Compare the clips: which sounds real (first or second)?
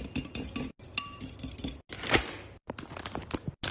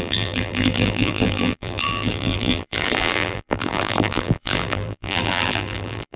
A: first